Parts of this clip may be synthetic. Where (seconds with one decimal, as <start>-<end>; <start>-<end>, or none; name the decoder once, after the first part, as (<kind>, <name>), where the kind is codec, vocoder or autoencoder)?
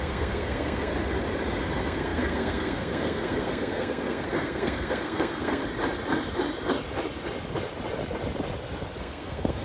0.0-0.9 (codec, SNAC); 1.6-5.6; 9.0-9.6